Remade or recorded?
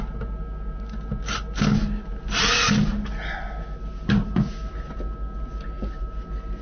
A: recorded